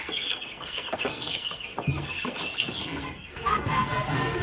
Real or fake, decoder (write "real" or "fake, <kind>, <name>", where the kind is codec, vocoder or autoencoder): fake, codec, SNAC